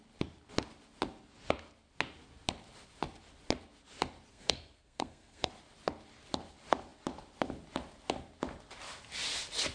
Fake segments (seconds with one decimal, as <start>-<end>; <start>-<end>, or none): 4.3-5.5